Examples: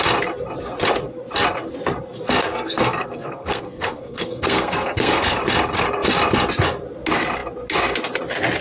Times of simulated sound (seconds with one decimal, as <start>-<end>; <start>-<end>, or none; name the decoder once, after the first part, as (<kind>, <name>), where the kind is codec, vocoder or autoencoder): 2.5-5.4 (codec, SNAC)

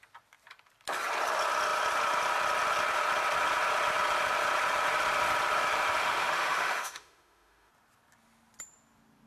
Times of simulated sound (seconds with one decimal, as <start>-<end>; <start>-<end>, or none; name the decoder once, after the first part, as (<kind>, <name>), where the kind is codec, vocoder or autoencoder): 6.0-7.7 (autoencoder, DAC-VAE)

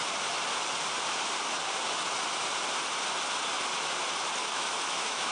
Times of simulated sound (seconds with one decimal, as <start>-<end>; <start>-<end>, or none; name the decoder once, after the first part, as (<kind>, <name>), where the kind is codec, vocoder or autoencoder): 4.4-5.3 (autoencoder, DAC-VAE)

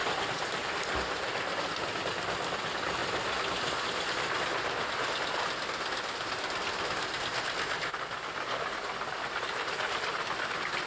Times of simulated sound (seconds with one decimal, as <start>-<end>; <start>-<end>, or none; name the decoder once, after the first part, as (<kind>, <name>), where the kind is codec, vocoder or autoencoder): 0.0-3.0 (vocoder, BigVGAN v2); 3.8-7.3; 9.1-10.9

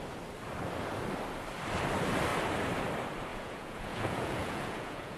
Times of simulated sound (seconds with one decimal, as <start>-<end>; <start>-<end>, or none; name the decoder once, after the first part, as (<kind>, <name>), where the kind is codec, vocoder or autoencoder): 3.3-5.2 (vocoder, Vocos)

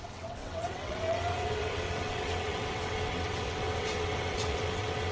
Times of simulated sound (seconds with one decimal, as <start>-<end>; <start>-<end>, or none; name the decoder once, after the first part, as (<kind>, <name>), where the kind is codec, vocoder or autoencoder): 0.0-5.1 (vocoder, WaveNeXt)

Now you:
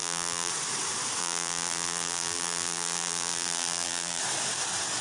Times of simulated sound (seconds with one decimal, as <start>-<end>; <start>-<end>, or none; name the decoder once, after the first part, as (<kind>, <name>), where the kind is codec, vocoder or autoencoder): 0.0-0.5 (vocoder, BigVGAN v2); 1.2-4.2